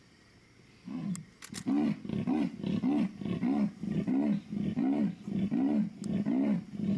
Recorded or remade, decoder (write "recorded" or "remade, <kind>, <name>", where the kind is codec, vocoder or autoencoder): recorded